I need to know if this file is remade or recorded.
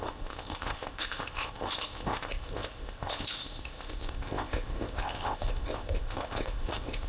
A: remade